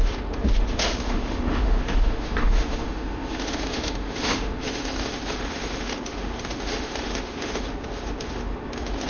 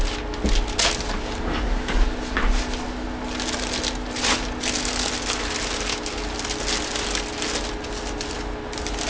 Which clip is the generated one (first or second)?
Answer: first